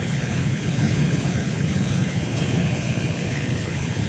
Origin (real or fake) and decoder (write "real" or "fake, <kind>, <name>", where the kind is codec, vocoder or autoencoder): fake, codec, HILCodec